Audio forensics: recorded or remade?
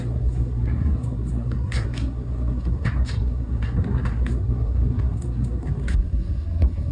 remade